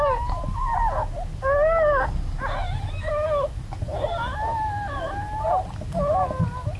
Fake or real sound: real